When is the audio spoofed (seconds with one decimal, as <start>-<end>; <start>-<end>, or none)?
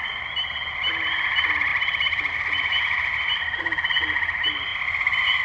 none